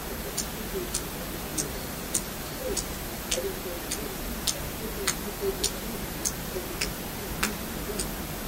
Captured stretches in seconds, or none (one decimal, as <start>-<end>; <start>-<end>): 0.0-1.5; 3.0-8.5